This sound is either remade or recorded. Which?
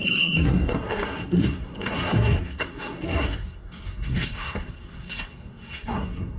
remade